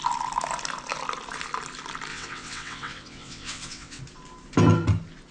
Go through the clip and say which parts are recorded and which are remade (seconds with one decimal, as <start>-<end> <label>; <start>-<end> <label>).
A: 0.0-2.1 recorded; 2.1-4.0 remade; 4.0-5.3 recorded